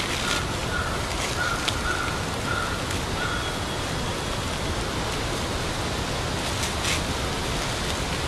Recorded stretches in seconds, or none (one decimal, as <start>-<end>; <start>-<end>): 0.0-8.3